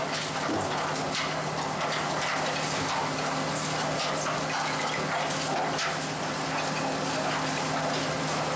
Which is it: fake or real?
real